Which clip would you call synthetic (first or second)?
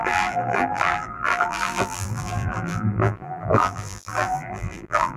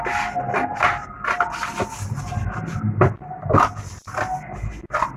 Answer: first